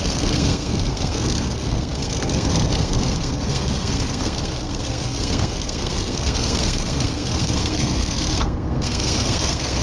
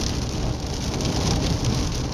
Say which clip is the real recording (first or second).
second